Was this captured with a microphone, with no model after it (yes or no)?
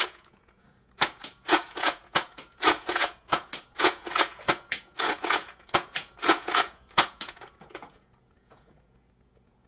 no